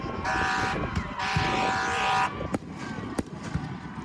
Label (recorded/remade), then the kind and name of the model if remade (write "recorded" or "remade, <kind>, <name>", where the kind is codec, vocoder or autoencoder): remade, vocoder, BigVGAN v2